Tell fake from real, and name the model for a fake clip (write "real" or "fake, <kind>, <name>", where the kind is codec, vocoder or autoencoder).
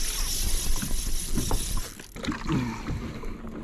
real